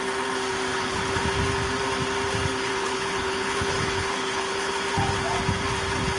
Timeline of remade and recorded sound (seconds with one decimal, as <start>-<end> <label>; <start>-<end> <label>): 0.0-0.7 recorded; 0.7-1.2 remade; 1.2-2.6 recorded; 2.6-4.7 remade; 4.7-6.2 recorded